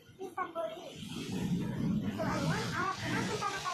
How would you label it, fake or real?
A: fake